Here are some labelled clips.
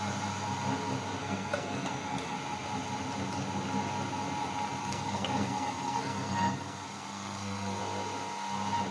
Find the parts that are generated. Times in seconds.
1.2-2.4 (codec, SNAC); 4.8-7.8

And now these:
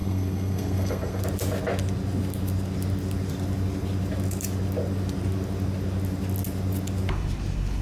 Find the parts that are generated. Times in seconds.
0.0-1.2 (codec, SNAC)

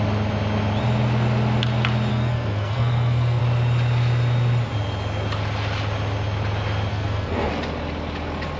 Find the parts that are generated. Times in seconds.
2.1-3.4 (codec, SNAC); 6.9-7.5

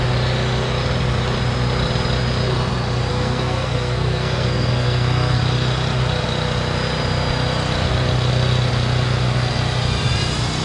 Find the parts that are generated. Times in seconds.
3.1-5.4 (codec, SNAC)

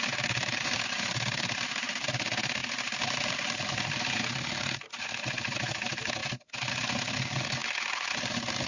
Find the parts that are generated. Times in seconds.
none

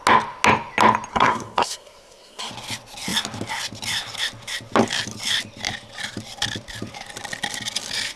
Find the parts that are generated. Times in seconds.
1.1-2.5 (codec, SNAC)